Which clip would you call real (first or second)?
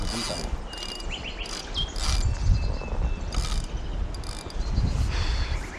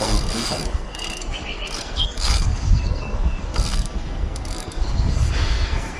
first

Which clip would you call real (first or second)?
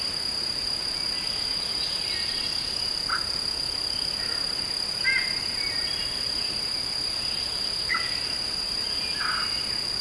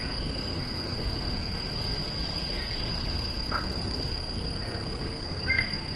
first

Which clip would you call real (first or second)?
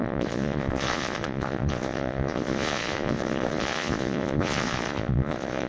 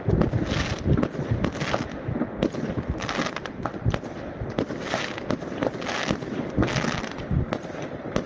second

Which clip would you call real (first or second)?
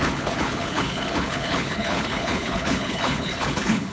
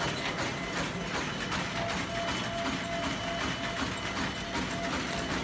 second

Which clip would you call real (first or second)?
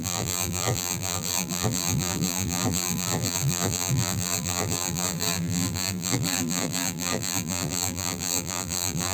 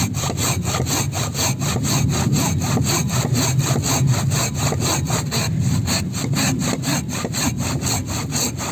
second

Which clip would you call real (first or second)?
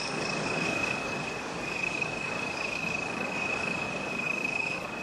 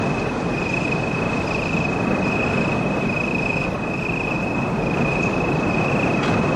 second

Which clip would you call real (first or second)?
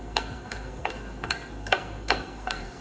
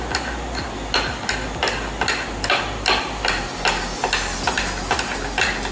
second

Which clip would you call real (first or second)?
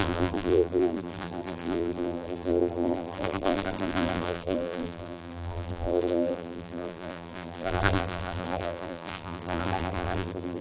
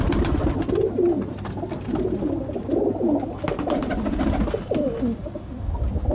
second